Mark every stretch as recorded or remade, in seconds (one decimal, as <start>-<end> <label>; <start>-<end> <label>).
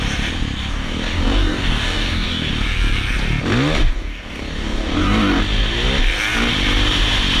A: 0.0-0.7 recorded; 0.7-2.5 remade; 2.5-3.8 recorded; 3.8-5.4 remade; 5.4-7.4 recorded